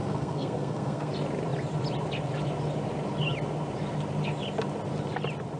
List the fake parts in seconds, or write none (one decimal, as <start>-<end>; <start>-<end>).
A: 0.0-1.1